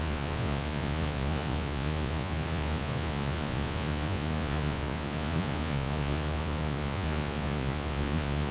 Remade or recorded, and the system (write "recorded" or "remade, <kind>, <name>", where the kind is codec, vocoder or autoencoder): remade, vocoder, Vocos